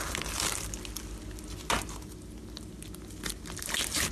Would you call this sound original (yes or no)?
yes